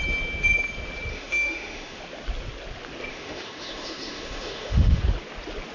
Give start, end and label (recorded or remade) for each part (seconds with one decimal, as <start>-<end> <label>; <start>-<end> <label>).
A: 0.0-1.1 recorded; 1.1-2.0 remade; 2.0-3.1 recorded; 3.1-5.0 remade; 5.0-5.7 recorded